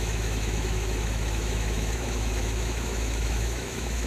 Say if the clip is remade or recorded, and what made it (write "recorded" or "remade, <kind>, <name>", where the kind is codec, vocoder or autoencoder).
remade, autoencoder, DAC-VAE